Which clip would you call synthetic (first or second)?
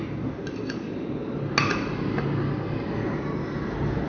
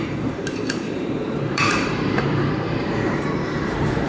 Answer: second